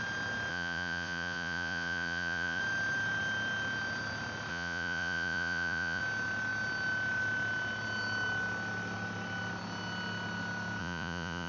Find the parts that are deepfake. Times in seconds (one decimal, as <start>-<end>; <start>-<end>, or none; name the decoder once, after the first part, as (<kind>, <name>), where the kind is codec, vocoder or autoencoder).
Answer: 0.5-2.6 (vocoder, Vocos); 4.5-6.0; 10.8-11.5